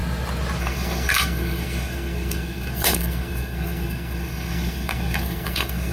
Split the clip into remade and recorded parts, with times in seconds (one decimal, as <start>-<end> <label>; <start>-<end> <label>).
0.0-0.6 recorded; 0.6-5.9 remade